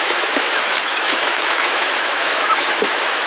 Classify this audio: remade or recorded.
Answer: remade